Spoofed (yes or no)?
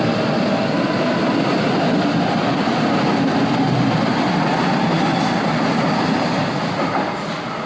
no